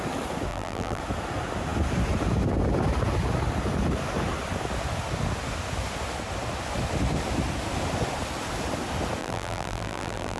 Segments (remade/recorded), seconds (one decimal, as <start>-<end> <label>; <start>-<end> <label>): 0.0-0.5 recorded; 0.5-1.0 remade; 1.0-9.2 recorded; 9.2-10.4 remade